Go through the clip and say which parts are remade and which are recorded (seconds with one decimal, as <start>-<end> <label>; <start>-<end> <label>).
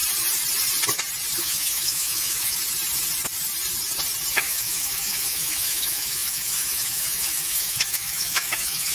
0.0-1.4 recorded; 1.4-2.6 remade; 2.6-4.3 recorded; 4.3-8.9 remade